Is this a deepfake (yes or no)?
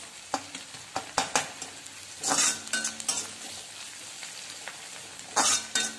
no